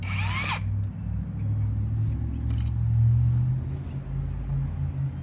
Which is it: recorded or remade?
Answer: recorded